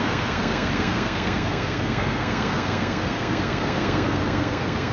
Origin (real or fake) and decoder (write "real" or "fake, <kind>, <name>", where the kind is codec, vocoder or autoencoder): fake, codec, SNAC